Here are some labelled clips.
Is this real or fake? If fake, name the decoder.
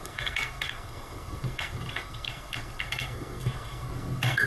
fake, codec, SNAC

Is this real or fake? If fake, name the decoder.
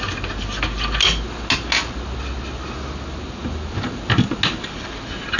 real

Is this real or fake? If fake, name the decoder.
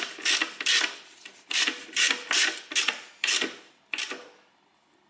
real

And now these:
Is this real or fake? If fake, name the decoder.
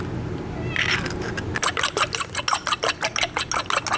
real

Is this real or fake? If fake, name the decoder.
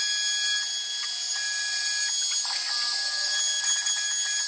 real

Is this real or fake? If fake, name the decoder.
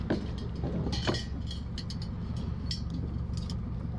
real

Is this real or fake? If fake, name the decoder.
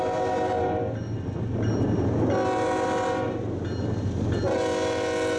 real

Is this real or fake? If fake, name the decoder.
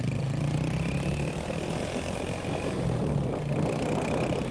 real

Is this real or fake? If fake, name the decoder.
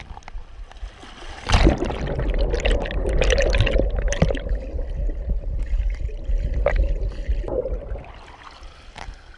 real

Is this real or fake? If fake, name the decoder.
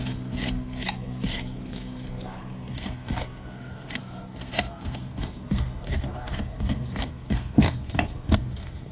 fake, codec, SNAC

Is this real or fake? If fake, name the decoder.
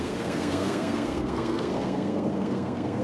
fake, codec, SNAC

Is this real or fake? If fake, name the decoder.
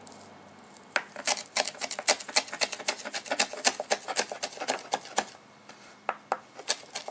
real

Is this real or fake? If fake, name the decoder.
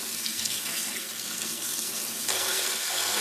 fake, codec, SNAC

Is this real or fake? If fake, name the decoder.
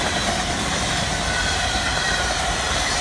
real